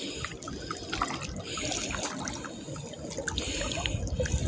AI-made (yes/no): no